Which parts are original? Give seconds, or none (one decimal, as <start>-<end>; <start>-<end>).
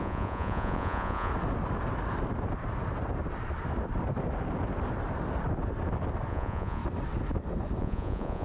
1.3-6.3; 6.8-7.8